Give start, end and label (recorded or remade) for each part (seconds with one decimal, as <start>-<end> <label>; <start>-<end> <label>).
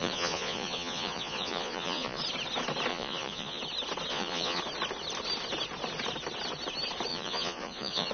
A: 0.0-2.2 remade; 2.2-2.9 recorded; 2.9-3.6 remade; 3.6-4.1 recorded; 4.1-4.6 remade; 4.6-7.1 recorded; 7.1-8.1 remade